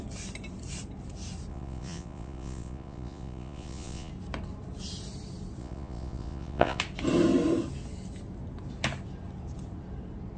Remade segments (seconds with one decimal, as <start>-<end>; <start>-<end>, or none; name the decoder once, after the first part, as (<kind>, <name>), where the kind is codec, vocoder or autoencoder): 1.5-4.1 (vocoder, Vocos); 5.6-6.8